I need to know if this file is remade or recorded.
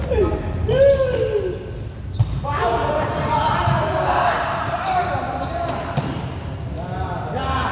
recorded